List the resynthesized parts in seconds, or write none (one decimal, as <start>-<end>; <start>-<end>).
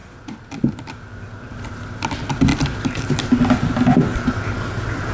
0.0-1.5